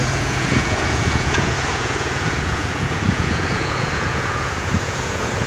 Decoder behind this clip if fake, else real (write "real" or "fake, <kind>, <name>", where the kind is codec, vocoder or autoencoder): fake, vocoder, Vocos